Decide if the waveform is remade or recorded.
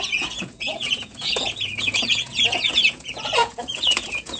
remade